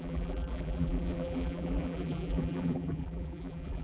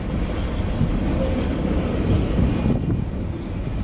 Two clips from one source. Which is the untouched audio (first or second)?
second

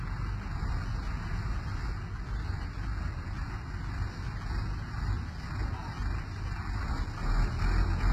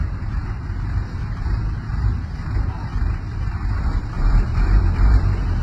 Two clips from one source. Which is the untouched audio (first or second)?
first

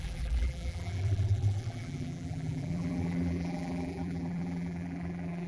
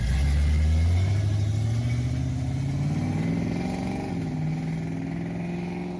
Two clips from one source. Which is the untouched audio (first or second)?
second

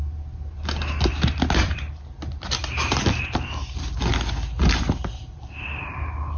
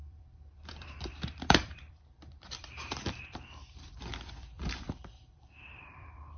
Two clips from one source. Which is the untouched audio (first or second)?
first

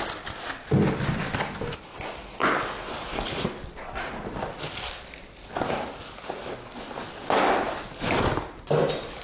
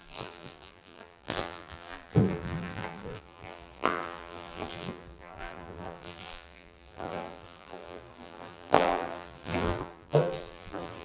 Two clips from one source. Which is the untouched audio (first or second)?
first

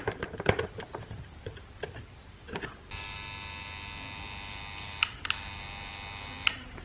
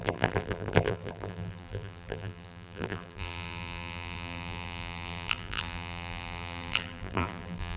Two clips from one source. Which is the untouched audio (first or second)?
first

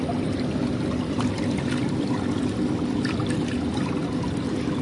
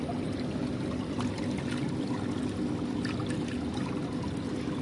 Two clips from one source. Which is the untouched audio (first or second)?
second